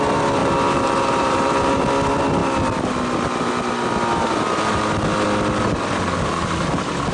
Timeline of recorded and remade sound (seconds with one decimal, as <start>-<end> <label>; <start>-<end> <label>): 0.0-0.4 recorded; 0.4-1.8 remade; 1.8-7.1 recorded

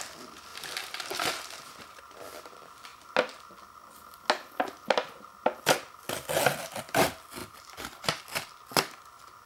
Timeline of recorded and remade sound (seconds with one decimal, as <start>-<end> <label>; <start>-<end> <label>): 0.0-0.5 recorded; 0.5-2.0 remade; 2.0-7.4 recorded; 7.4-8.2 remade; 8.2-9.5 recorded

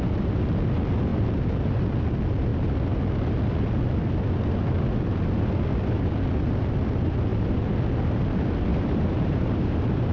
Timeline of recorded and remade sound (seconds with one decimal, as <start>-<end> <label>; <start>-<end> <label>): 0.0-1.1 recorded; 1.1-1.9 remade; 1.9-8.7 recorded; 8.7-10.1 remade

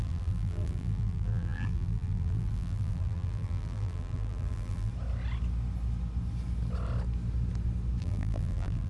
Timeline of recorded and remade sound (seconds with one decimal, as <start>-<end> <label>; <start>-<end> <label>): 0.0-4.9 remade; 4.9-8.0 recorded; 8.0-8.9 remade